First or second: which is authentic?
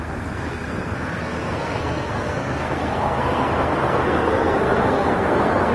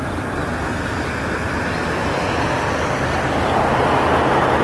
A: second